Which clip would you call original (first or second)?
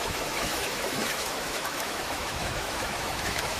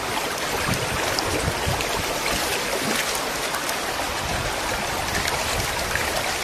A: second